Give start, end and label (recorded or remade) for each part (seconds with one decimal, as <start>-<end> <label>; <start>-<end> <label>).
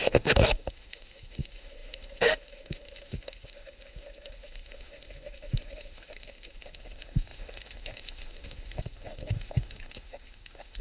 0.0-10.8 remade